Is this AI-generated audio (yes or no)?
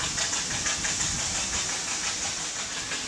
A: no